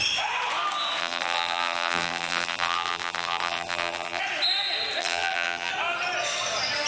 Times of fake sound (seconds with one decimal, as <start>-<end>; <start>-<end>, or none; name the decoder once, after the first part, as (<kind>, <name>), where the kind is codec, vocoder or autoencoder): 1.0-4.2 (vocoder, BigVGAN v2); 5.0-5.7